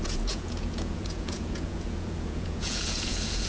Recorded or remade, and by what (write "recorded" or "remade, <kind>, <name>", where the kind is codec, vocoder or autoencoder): remade, vocoder, Vocos